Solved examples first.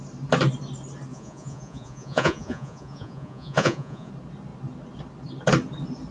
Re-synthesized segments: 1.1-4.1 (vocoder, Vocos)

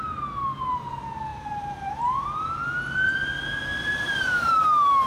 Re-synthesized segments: 1.3-2.2 (vocoder, BigVGAN v2); 3.7-5.1

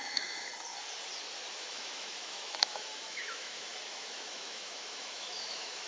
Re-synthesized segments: 0.0-0.5 (autoencoder, DAC-VAE); 1.5-5.9

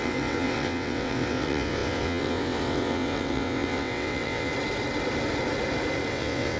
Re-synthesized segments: 0.0-4.5 (vocoder, WaveNeXt); 6.1-6.6

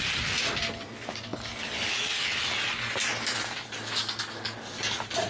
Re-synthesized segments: none